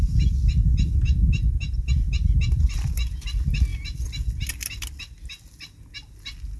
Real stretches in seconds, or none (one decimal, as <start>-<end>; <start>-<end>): 0.0-6.6